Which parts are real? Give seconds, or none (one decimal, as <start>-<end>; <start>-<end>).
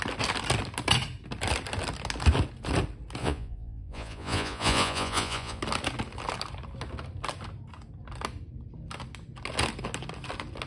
0.0-3.2; 5.6-10.7